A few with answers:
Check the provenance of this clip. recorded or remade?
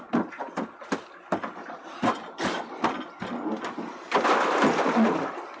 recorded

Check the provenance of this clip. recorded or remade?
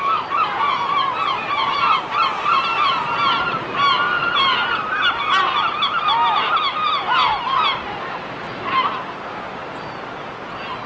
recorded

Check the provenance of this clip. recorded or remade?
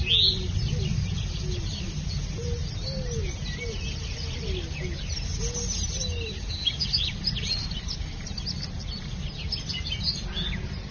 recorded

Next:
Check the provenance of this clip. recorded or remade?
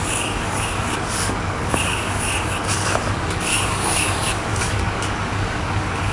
remade